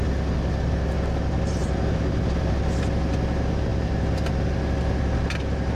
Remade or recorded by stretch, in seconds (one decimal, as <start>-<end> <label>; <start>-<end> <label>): 0.0-1.6 recorded; 1.6-2.5 remade; 2.5-3.7 recorded; 3.7-4.4 remade; 4.4-5.8 recorded